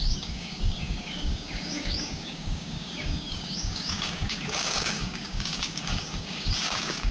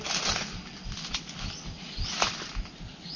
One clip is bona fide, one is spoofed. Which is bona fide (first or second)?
second